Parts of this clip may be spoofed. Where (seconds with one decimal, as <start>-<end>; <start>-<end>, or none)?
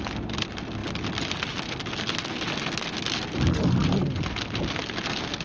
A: none